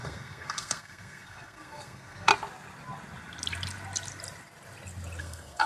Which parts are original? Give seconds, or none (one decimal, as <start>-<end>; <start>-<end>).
2.3-5.2